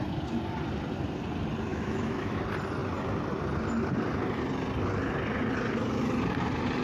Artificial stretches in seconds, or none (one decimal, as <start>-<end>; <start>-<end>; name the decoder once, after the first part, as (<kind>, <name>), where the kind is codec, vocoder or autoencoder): 1.7-2.4 (autoencoder, DAC-VAE)